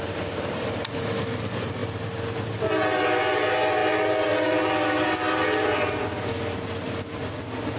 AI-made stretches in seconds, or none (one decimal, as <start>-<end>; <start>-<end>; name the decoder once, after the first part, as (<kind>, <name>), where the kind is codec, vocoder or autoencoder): none